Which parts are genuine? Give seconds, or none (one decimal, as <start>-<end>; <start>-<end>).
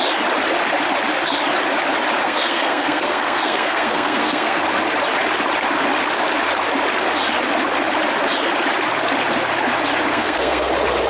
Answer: 0.0-2.2; 4.6-10.1; 10.7-11.1